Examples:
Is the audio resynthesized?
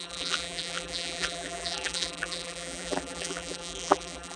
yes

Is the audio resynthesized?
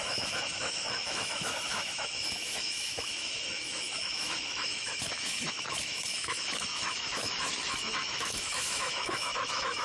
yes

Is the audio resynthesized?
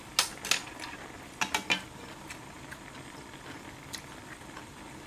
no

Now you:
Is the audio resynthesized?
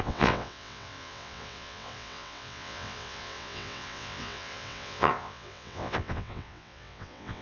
yes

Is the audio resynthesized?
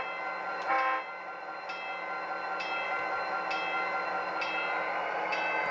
no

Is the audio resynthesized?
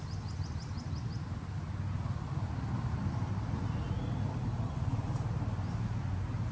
no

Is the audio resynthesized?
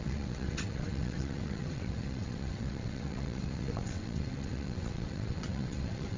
yes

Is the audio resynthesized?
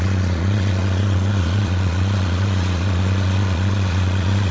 yes